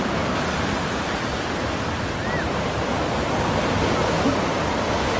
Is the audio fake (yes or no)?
no